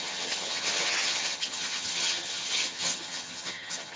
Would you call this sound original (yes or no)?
no